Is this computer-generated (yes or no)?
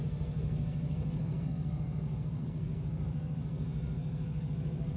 yes